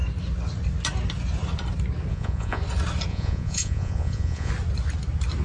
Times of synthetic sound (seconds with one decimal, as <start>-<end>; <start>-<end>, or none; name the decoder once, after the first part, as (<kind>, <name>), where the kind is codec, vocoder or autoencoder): 2.1-2.6 (vocoder, Vocos); 3.1-4.5